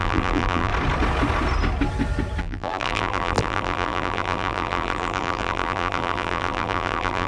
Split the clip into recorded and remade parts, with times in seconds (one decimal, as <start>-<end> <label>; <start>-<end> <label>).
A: 0.0-0.7 remade; 0.7-2.4 recorded; 2.4-7.3 remade